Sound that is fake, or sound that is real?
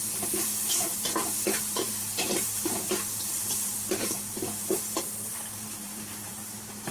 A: fake